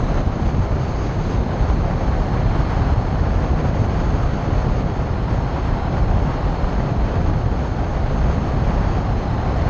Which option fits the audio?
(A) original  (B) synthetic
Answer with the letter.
A